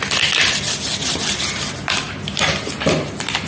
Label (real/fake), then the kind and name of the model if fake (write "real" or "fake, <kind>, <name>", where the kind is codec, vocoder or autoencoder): real